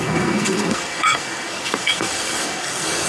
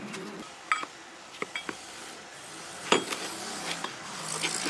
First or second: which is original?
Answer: second